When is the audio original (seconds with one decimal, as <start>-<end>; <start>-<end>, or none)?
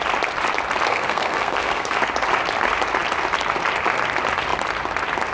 0.0-0.9; 2.0-5.3